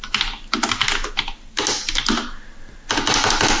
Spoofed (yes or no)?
no